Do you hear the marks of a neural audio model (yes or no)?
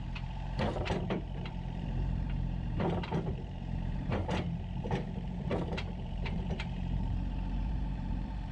yes